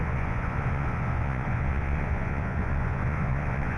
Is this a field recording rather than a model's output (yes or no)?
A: no